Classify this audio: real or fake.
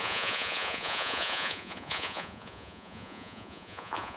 fake